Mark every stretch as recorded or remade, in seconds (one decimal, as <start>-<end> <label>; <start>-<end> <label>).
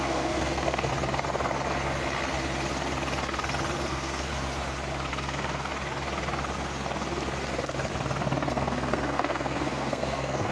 0.0-0.9 remade; 0.9-3.9 recorded; 3.9-4.3 remade; 4.3-5.1 recorded; 5.1-5.7 remade; 5.7-8.5 recorded; 8.5-10.5 remade